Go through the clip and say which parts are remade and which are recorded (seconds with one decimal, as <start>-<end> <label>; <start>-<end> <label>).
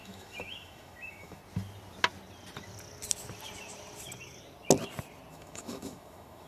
0.0-1.4 remade; 1.4-5.3 recorded; 5.3-6.5 remade